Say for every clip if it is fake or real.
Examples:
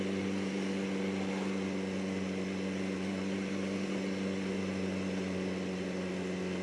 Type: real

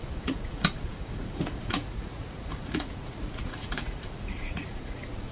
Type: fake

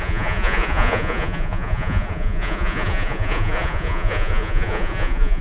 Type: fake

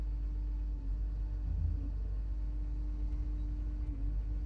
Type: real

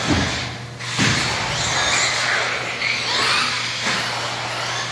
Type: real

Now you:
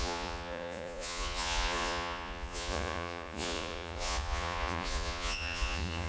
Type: fake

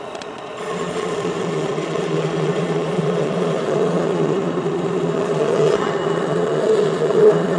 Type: fake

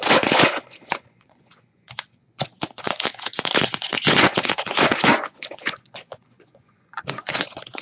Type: fake